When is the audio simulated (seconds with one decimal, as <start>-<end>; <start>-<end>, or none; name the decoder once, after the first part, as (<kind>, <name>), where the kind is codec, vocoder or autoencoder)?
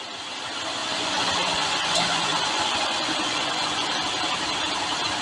0.8-3.9 (vocoder, Vocos)